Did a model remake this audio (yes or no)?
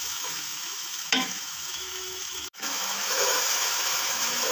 yes